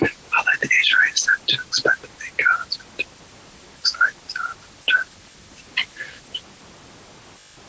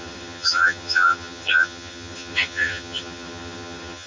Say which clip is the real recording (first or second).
first